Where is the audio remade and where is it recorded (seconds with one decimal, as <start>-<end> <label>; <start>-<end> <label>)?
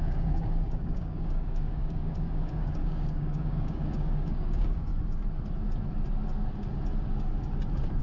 0.0-4.9 remade; 4.9-8.0 recorded